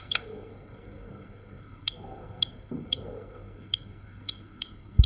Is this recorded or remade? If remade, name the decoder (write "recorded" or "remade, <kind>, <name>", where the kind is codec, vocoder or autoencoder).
remade, codec, SNAC